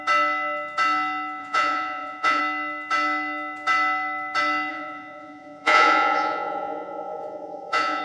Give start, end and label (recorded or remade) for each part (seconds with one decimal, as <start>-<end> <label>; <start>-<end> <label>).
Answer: 0.0-1.4 recorded; 1.4-2.4 remade; 2.4-4.7 recorded; 4.7-8.0 remade